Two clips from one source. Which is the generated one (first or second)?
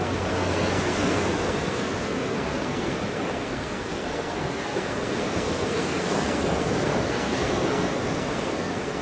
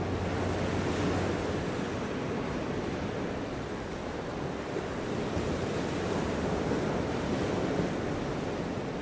first